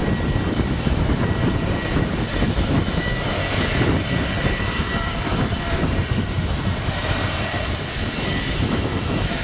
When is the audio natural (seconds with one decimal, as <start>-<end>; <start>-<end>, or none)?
0.0-2.5; 3.4-8.5

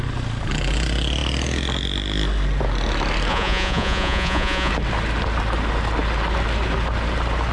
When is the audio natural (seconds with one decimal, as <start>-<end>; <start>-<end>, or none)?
0.0-3.3; 4.7-7.5

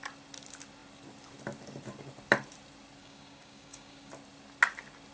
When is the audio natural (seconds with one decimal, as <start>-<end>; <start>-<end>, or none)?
0.0-3.0; 4.1-5.1

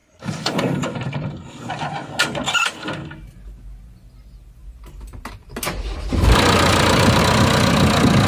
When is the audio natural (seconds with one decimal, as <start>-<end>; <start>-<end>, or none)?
1.8-4.6; 7.2-8.3

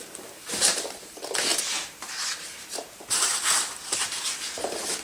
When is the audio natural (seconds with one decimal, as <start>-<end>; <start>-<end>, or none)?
none